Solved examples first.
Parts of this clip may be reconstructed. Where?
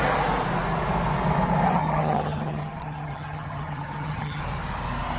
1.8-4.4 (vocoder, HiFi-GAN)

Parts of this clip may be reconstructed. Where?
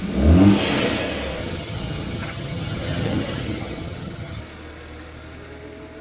1.4-4.4 (vocoder, HiFi-GAN)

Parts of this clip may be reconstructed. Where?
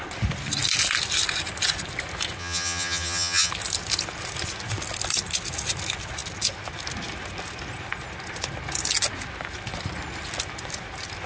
2.4-3.5 (vocoder, HiFi-GAN)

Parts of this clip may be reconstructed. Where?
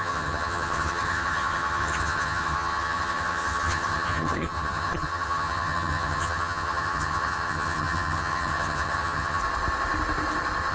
0.0-9.4 (vocoder, HiFi-GAN)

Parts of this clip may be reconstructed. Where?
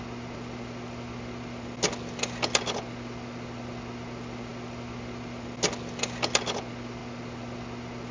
none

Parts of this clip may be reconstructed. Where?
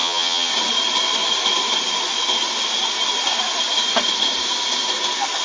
0.0-0.5 (vocoder, HiFi-GAN)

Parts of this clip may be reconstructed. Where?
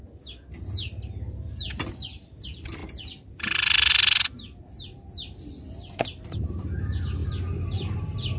none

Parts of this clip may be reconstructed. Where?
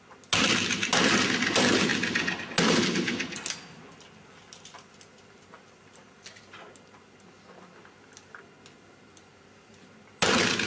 none